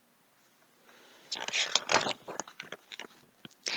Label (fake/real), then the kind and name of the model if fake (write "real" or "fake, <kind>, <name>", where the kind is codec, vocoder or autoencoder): real